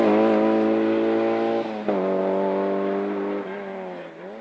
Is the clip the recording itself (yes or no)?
yes